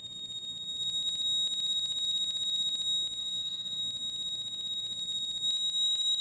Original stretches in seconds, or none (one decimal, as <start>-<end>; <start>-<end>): 0.0-3.2; 3.8-6.2